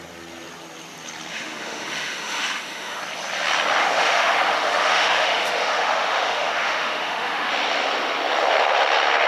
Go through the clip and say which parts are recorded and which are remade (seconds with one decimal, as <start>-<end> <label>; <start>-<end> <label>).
0.0-1.3 recorded; 1.3-3.0 remade; 3.0-3.8 recorded; 3.8-7.5 remade; 7.5-9.3 recorded